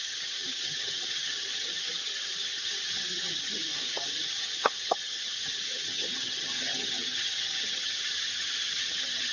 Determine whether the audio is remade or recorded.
remade